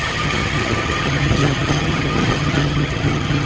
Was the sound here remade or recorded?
remade